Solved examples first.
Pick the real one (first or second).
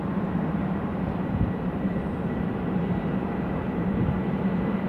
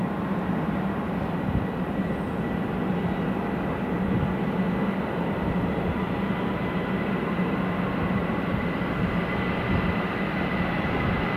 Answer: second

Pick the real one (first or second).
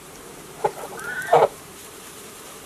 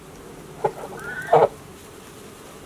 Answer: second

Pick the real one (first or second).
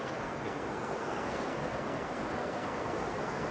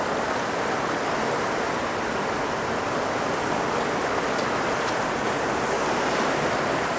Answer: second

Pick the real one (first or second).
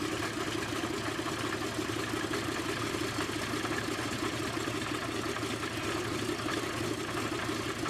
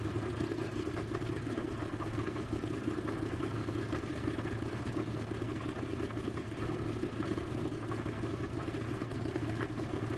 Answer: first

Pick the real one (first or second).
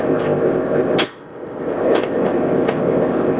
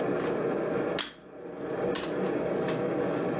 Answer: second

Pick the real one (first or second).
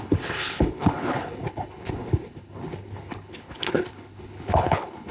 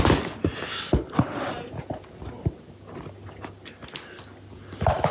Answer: second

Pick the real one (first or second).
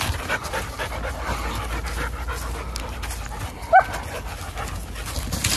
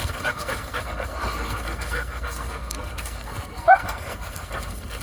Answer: first